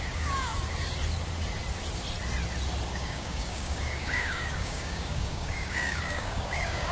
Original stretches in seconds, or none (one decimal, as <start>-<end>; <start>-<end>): 0.5-2.9